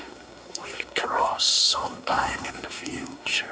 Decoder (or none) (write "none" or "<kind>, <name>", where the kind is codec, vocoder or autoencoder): codec, SNAC